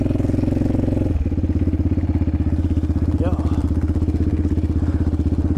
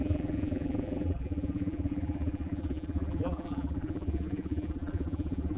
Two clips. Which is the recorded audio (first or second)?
first